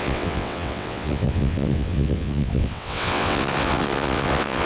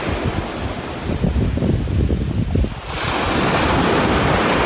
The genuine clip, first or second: second